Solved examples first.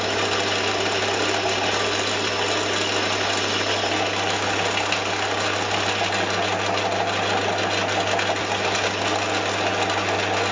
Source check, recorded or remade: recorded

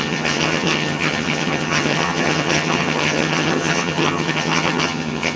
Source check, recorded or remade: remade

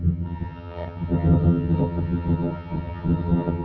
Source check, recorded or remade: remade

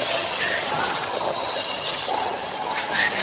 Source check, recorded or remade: remade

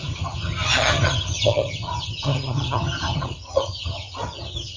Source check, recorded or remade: remade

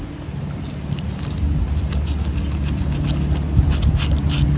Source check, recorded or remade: recorded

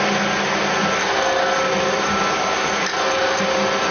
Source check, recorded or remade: recorded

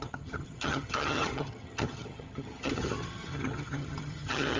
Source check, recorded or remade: remade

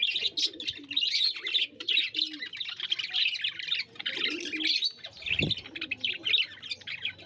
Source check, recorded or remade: recorded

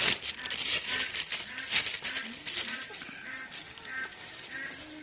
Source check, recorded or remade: recorded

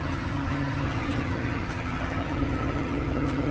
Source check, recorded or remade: remade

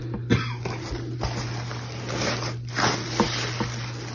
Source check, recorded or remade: recorded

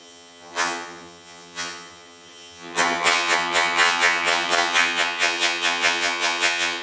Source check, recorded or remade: remade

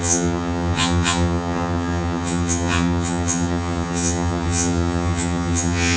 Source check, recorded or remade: remade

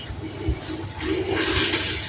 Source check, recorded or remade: recorded